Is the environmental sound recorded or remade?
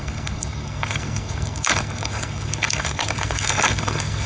remade